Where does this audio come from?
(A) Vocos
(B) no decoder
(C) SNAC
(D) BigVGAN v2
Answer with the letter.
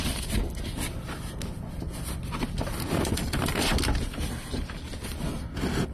B